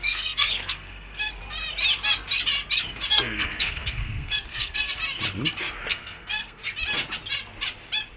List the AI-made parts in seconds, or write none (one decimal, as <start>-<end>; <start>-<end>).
0.0-1.4; 3.1-5.0; 5.9-6.6